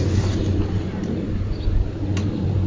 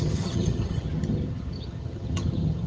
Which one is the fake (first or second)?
second